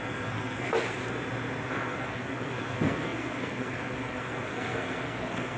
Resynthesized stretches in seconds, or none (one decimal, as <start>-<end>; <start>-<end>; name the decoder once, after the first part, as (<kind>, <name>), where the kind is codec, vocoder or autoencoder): 0.0-1.0 (codec, SNAC); 1.7-5.6